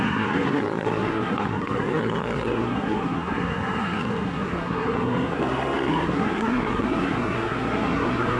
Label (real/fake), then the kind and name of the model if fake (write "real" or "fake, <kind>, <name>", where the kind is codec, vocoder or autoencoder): fake, codec, SNAC